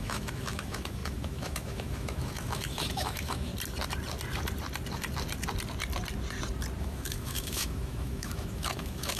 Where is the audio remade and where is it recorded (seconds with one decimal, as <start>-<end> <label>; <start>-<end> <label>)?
0.0-3.5 remade; 3.5-6.8 recorded; 6.8-9.2 remade